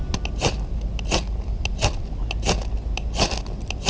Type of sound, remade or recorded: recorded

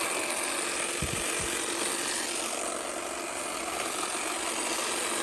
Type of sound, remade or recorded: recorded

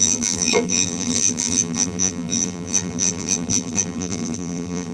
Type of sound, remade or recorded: remade